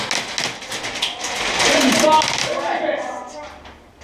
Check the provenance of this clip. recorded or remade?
recorded